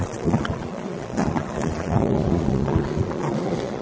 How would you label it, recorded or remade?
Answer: remade